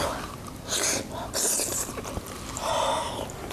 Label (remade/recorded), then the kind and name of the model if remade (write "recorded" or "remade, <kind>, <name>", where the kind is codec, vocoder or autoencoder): recorded